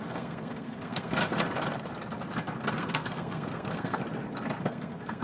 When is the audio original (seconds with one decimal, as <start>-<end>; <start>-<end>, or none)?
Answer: 1.2-2.7; 4.0-4.6